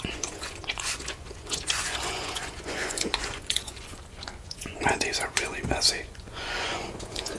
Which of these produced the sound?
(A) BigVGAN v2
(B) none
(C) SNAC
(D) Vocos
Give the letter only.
D